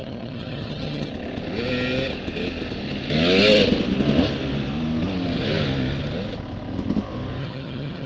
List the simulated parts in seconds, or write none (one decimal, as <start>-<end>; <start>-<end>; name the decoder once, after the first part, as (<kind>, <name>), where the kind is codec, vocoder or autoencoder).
0.0-1.1 (vocoder, HiFi-GAN); 7.4-8.1